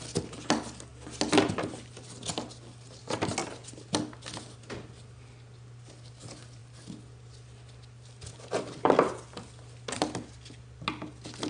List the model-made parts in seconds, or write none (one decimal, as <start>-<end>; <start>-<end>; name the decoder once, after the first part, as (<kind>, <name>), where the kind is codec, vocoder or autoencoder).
none